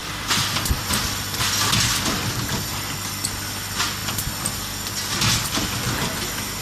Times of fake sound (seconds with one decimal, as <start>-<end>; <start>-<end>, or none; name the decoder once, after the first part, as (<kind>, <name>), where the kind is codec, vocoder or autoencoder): none